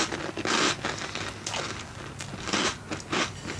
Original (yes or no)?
yes